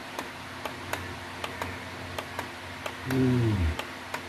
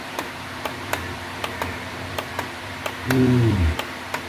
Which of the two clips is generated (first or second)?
second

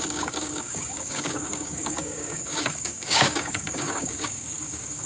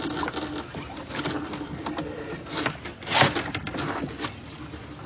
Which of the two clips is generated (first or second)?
first